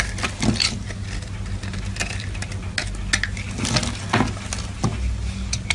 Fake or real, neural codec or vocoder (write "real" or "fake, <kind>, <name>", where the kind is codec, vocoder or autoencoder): real